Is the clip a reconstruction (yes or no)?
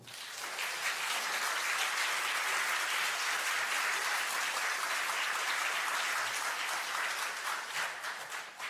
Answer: no